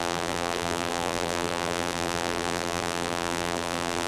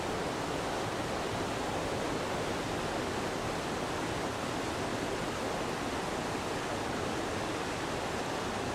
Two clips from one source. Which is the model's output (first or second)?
first